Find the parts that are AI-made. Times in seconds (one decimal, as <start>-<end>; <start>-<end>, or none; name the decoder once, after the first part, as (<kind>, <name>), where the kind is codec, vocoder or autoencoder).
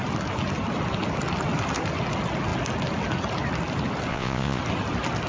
4.1-4.6 (vocoder, Vocos)